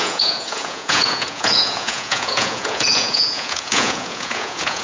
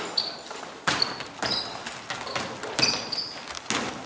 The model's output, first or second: first